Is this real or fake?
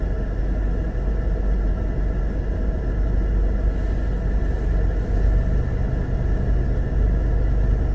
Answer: real